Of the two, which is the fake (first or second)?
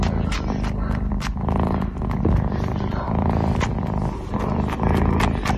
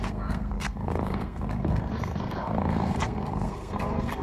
second